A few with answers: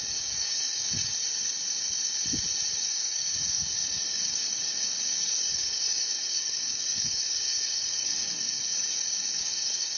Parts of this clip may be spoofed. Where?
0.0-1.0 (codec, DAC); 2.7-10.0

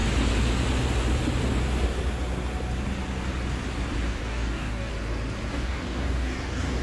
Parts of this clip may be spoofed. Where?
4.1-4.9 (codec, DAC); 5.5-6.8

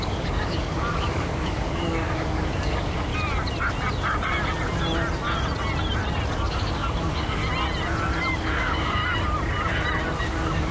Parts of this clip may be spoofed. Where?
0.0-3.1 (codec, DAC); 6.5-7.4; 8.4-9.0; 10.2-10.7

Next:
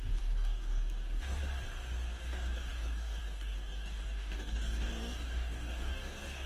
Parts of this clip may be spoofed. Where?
0.0-1.4 (codec, DAC); 2.2-6.5

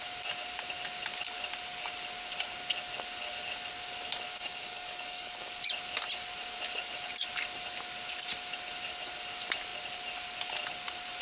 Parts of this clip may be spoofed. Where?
4.3-5.6 (codec, DAC)

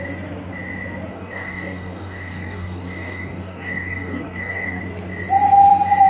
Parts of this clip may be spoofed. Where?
1.1-4.8 (codec, DAC)